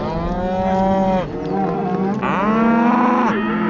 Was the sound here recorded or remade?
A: recorded